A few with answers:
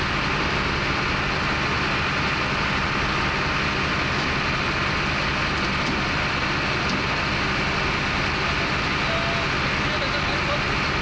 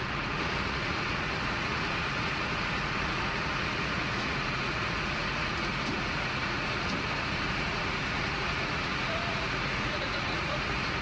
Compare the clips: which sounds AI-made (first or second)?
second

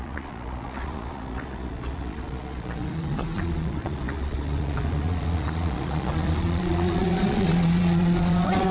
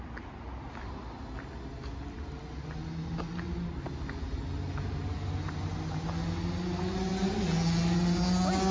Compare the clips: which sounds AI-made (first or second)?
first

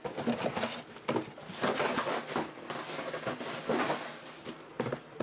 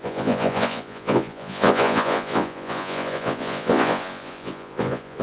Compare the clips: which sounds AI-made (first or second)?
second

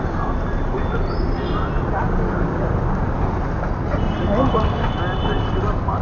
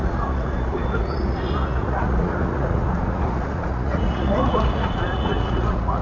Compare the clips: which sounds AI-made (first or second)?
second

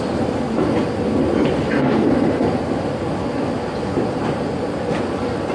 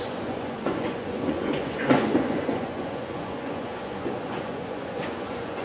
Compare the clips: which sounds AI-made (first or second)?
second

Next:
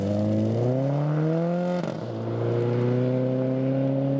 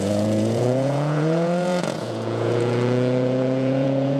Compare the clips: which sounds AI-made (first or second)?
second